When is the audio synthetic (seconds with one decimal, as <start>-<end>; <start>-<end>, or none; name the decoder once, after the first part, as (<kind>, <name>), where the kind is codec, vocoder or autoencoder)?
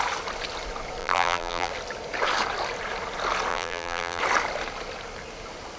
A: 1.0-1.7 (vocoder, BigVGAN v2); 3.5-4.2